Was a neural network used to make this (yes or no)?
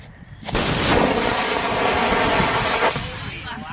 no